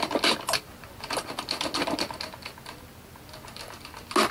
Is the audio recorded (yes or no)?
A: yes